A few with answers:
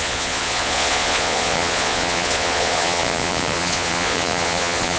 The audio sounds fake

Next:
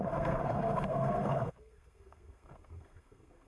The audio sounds fake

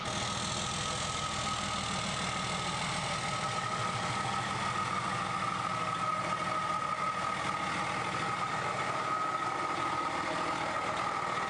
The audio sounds real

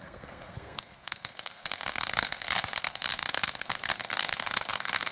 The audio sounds fake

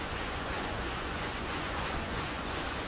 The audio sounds fake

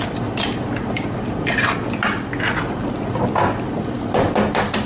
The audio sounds real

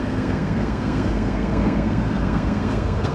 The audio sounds fake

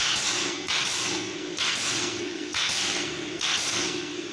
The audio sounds fake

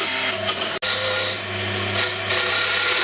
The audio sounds real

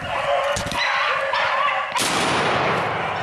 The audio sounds real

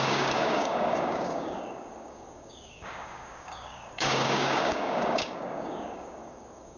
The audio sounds fake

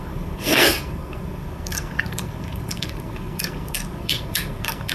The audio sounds fake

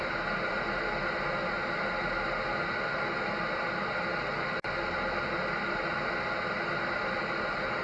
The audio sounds real